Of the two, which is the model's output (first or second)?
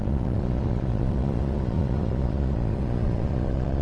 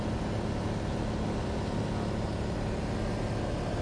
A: first